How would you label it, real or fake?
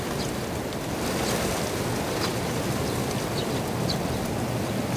real